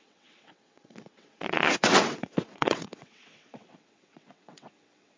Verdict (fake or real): fake